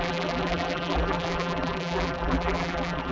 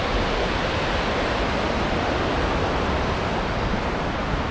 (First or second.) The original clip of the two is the second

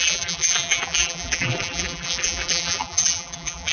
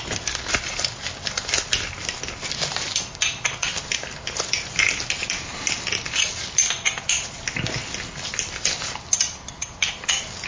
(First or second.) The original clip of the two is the second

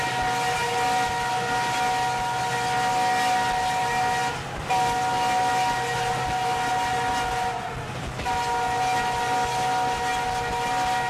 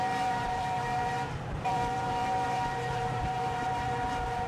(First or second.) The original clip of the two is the first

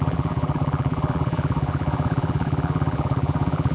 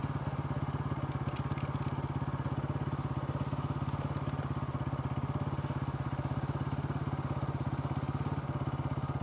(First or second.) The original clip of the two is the second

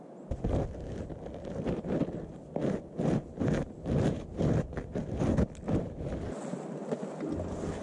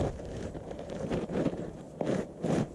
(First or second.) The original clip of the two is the first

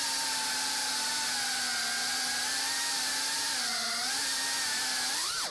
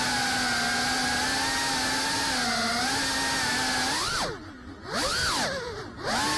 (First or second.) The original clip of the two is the second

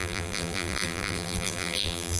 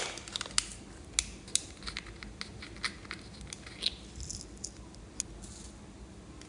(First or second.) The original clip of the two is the second